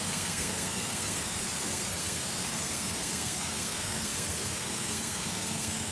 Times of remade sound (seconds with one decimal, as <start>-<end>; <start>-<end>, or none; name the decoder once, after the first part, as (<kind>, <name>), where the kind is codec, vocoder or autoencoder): 0.0-5.9 (codec, SNAC)